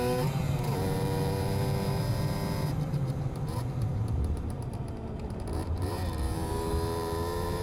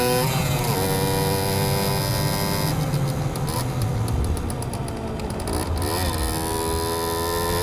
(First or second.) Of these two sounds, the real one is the second